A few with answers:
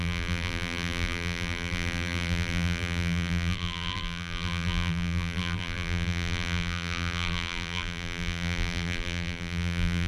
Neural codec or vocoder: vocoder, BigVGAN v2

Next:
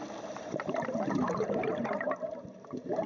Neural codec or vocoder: vocoder, BigVGAN v2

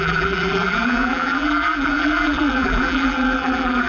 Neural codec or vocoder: vocoder, BigVGAN v2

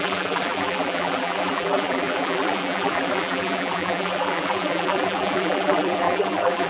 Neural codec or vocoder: vocoder, BigVGAN v2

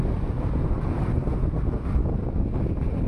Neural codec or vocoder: none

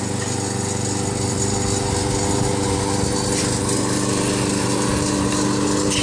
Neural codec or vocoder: none